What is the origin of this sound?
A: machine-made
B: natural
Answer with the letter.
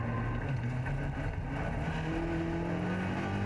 B